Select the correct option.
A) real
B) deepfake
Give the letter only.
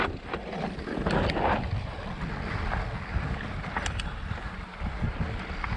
A